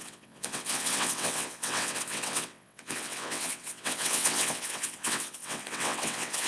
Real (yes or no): no